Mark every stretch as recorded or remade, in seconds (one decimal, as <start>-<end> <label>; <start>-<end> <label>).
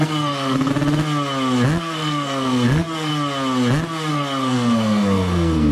0.0-0.7 remade; 0.7-1.8 recorded; 1.8-3.1 remade; 3.1-4.1 recorded; 4.1-5.7 remade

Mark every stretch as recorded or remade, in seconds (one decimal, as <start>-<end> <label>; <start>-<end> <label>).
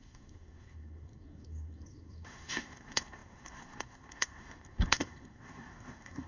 0.0-6.3 remade